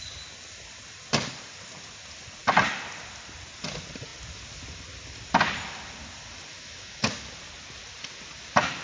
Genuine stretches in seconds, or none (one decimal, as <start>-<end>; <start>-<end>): 0.0-6.5; 7.1-8.8